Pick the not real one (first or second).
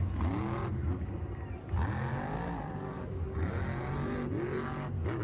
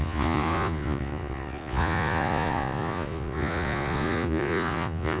second